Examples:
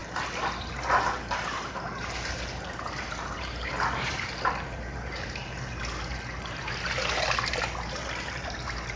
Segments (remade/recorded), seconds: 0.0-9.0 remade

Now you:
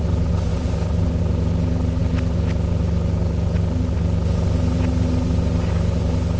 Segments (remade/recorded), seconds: 0.0-0.5 recorded; 0.5-1.2 remade; 1.2-6.4 recorded

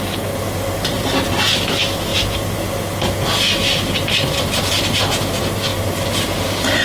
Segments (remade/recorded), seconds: 0.0-2.1 recorded; 2.1-4.9 remade; 4.9-5.7 recorded; 5.7-6.8 remade

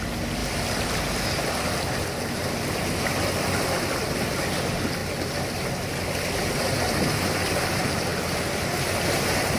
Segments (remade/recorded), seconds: 0.0-9.6 recorded

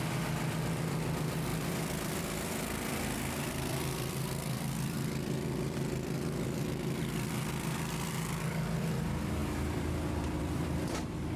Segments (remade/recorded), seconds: 0.0-11.4 remade

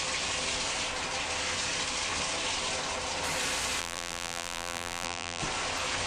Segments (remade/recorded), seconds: 0.0-3.8 recorded; 3.8-5.4 remade; 5.4-6.1 recorded

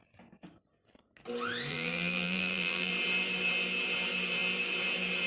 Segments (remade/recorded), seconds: 0.0-1.7 recorded; 1.7-2.9 remade; 2.9-5.3 recorded

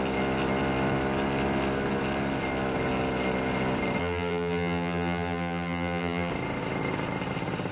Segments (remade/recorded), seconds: 0.0-4.0 recorded; 4.0-6.3 remade; 6.3-7.7 recorded